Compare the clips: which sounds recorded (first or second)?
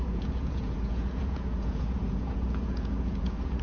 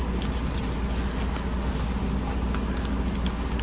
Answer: second